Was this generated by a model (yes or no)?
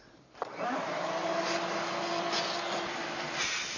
no